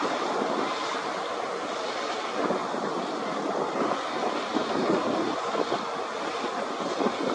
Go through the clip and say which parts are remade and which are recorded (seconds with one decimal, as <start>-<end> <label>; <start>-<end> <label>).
0.0-7.3 recorded